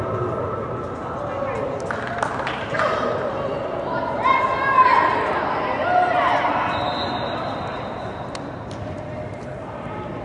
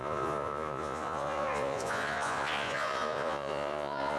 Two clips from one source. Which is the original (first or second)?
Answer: first